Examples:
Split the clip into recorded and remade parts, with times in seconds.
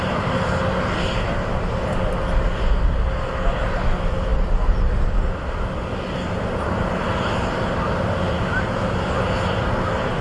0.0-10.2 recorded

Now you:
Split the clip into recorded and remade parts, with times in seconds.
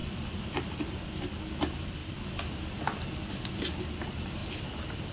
0.0-5.1 recorded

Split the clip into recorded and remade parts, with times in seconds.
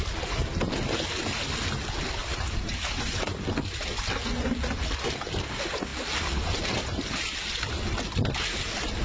0.0-2.2 recorded; 2.2-3.1 remade; 3.1-9.0 recorded